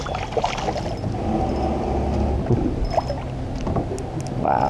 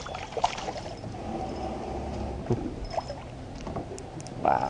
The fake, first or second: second